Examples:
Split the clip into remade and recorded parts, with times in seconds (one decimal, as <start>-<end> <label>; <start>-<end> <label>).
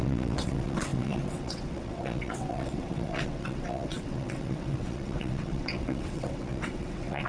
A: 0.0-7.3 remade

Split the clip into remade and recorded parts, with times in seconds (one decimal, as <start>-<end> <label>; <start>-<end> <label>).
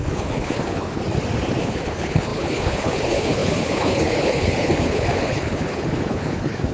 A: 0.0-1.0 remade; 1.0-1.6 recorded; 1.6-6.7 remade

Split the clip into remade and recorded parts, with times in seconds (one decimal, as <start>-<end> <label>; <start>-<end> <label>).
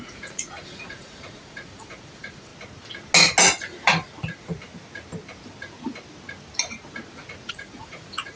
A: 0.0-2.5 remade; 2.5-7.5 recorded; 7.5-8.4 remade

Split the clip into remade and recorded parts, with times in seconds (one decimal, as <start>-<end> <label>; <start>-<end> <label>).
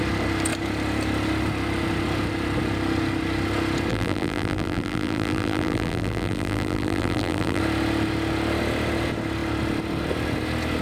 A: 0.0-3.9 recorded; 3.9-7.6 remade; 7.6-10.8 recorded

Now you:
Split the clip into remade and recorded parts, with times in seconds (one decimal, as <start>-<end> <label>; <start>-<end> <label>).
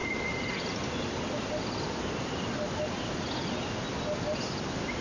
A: 0.0-5.0 recorded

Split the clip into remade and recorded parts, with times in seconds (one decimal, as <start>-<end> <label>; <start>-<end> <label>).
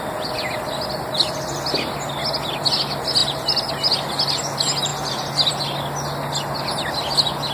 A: 0.0-4.9 recorded; 4.9-5.5 remade; 5.5-7.5 recorded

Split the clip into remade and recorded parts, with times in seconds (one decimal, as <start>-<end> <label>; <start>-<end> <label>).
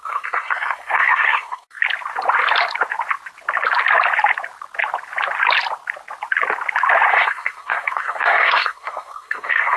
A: 0.0-1.8 remade; 1.8-7.1 recorded; 7.1-9.8 remade